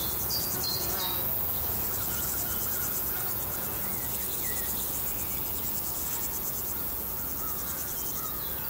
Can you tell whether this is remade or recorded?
remade